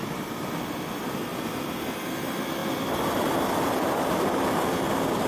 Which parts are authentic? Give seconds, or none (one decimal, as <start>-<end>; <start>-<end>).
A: 0.0-5.3